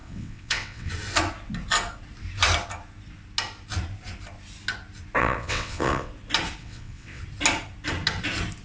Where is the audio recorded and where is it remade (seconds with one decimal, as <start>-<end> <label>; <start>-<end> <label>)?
0.0-0.9 remade; 0.9-5.2 recorded; 5.2-6.1 remade; 6.1-6.6 recorded; 6.6-7.2 remade; 7.2-8.6 recorded